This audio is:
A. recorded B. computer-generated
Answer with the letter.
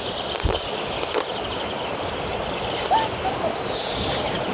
A